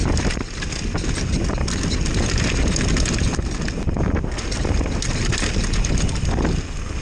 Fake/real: real